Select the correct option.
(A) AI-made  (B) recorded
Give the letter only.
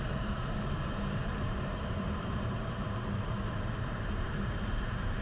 A